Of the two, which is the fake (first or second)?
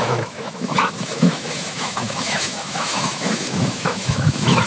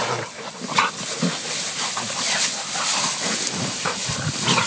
first